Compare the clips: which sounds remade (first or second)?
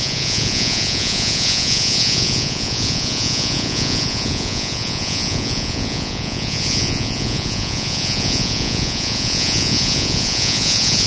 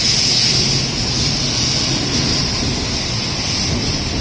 first